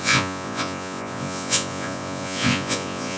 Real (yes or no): no